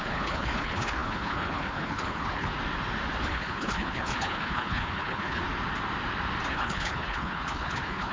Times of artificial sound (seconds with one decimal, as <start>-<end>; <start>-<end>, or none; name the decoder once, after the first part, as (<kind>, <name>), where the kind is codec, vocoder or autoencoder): 0.0-2.5 (codec, HILCodec); 3.2-5.4; 6.5-8.1